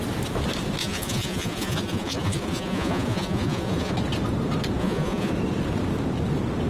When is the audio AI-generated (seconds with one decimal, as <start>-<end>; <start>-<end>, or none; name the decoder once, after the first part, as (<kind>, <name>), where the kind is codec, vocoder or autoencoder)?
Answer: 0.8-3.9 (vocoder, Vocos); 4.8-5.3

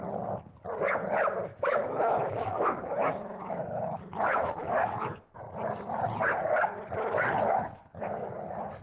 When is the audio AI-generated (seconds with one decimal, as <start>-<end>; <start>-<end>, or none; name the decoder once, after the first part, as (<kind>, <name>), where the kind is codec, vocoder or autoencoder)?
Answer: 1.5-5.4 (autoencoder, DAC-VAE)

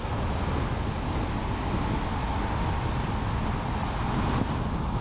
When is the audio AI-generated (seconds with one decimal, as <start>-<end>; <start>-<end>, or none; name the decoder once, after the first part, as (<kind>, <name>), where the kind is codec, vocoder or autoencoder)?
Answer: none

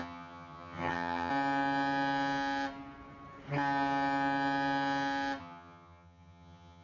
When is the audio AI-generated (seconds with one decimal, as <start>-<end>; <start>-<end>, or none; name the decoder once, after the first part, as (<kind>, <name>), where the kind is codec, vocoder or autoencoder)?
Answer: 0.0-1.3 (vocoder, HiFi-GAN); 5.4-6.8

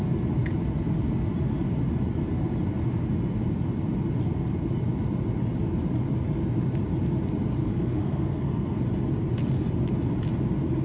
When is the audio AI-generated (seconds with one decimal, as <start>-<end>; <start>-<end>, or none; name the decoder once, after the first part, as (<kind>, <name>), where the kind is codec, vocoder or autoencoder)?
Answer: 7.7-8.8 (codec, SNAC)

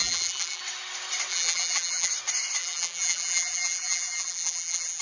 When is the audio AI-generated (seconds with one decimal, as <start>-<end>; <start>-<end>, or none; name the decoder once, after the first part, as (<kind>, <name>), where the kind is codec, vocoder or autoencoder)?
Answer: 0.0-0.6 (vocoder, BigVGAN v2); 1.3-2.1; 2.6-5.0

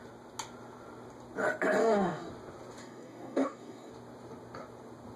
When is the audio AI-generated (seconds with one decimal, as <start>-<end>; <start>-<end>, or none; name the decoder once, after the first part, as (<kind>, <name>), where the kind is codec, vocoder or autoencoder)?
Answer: 1.8-2.3 (codec, DAC); 2.8-3.9